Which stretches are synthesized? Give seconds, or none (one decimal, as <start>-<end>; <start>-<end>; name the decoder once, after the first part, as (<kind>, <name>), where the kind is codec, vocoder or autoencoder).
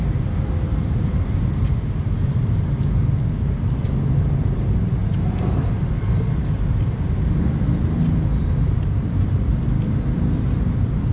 0.7-1.3 (vocoder, BigVGAN v2); 8.4-9.6